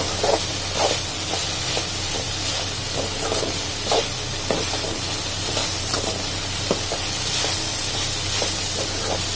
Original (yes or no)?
yes